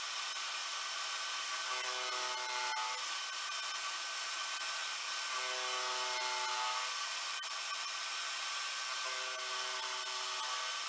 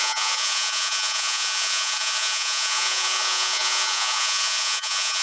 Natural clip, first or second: first